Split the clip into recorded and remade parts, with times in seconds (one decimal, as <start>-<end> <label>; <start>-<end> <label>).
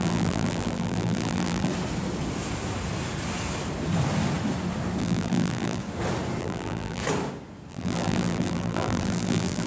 0.0-1.7 remade; 1.7-5.0 recorded; 5.0-5.8 remade; 5.8-6.4 recorded; 6.4-7.0 remade; 7.0-7.7 recorded; 7.7-9.7 remade